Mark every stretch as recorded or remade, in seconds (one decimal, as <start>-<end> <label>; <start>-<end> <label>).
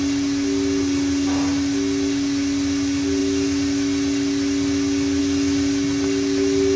0.0-6.8 recorded